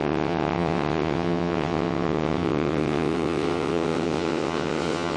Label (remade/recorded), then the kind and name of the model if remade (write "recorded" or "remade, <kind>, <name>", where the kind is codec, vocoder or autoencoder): remade, vocoder, WaveNeXt